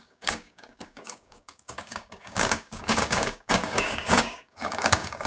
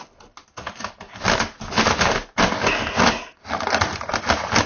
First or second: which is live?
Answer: second